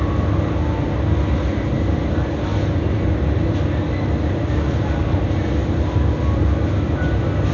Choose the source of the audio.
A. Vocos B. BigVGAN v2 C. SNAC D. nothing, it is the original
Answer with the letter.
D